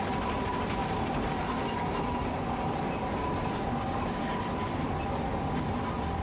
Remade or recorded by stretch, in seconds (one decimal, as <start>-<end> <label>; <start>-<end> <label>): 0.0-6.2 recorded